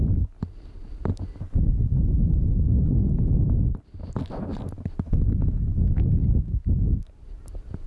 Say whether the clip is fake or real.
real